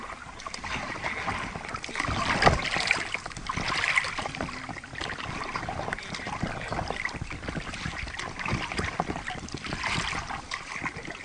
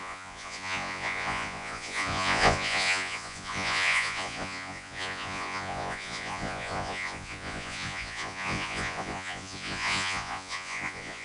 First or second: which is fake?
second